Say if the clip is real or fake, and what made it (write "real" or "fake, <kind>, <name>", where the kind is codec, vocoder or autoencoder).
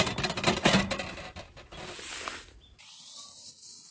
real